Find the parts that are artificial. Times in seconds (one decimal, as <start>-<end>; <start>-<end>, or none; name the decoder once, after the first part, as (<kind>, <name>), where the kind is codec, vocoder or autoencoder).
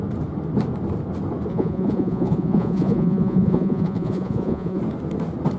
1.5-4.8 (vocoder, Vocos)